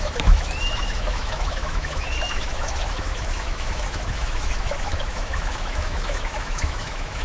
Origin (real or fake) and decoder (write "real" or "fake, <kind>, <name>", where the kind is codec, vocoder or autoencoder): fake, autoencoder, DAC-VAE